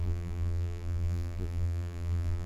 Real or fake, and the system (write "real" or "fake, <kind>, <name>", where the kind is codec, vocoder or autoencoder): fake, vocoder, BigVGAN v2